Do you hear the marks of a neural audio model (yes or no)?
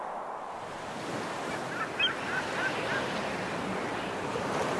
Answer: no